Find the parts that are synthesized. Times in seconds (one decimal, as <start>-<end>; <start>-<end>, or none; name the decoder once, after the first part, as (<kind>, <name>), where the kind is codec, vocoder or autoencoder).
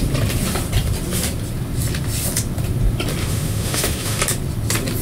3.2-4.2 (autoencoder, DAC-VAE)